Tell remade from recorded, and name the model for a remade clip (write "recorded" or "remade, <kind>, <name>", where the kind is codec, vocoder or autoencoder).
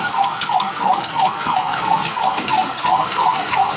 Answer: remade, codec, SNAC